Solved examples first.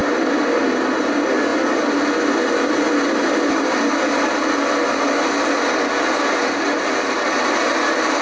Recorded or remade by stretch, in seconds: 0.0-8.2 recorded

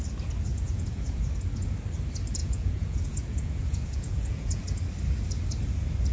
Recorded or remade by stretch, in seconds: 0.0-0.5 recorded; 0.5-1.2 remade; 1.2-2.4 recorded; 2.4-4.6 remade; 4.6-6.1 recorded

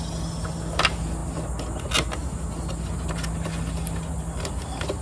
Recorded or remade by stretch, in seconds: 0.0-5.0 recorded

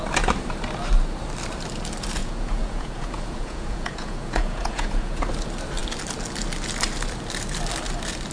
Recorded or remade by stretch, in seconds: 0.0-2.2 recorded; 2.2-5.3 remade; 5.3-8.3 recorded

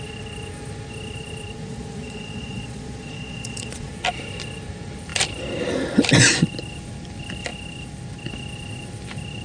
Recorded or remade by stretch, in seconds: 0.0-1.6 recorded; 1.6-3.9 remade; 3.9-9.4 recorded